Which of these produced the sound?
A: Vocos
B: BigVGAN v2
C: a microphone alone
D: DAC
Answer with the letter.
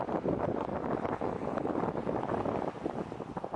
B